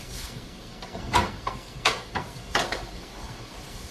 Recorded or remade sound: remade